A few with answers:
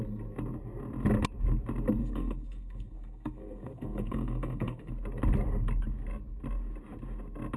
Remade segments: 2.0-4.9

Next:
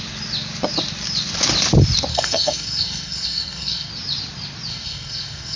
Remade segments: 2.1-3.9; 4.7-5.6

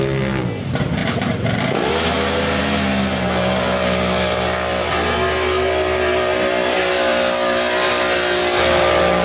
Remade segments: none